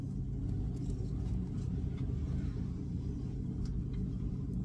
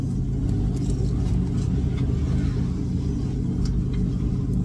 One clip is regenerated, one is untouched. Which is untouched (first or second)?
second